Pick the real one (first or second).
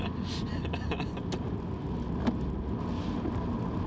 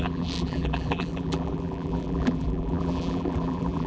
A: first